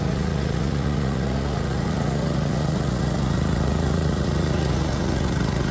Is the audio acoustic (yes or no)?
no